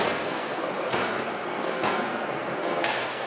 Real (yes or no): no